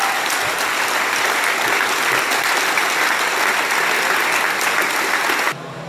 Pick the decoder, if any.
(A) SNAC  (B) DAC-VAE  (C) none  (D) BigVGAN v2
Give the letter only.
C